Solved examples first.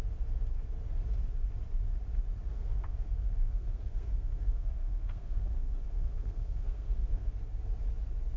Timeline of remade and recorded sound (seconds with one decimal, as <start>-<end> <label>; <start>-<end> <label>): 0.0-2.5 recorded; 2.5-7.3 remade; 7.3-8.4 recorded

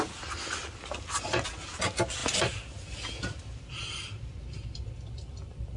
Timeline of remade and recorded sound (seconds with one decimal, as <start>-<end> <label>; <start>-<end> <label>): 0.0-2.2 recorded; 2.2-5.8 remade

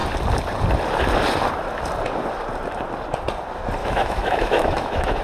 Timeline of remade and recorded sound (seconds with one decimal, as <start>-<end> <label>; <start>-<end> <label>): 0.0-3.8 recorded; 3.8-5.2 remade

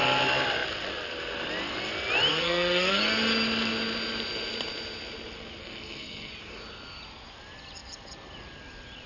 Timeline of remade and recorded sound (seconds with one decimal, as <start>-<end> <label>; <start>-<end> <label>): 0.0-2.3 recorded; 2.3-3.0 remade; 3.0-5.6 recorded; 5.6-6.3 remade; 6.3-9.1 recorded

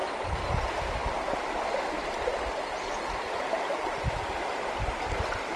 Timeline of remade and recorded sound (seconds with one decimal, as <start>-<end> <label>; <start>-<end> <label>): 0.0-5.6 recorded

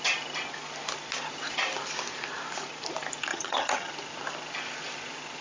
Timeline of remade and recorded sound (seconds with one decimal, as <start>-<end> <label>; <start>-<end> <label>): 0.0-3.3 recorded; 3.3-3.9 remade; 3.9-5.4 recorded

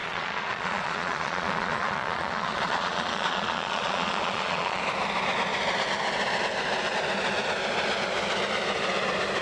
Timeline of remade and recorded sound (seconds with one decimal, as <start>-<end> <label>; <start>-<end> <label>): 0.0-4.8 remade; 4.8-9.4 recorded

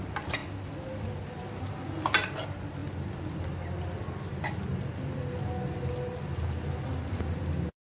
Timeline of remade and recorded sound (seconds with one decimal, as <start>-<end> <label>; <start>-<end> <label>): 0.0-7.9 recorded